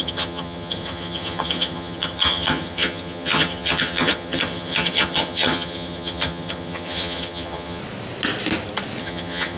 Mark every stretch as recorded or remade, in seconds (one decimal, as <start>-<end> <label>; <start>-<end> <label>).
0.0-7.8 remade; 7.8-9.0 recorded; 9.0-9.6 remade